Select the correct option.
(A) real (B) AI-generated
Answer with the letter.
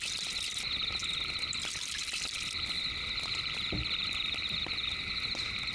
A